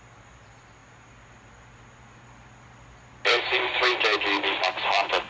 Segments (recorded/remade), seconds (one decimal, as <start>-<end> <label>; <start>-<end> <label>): 0.0-5.3 recorded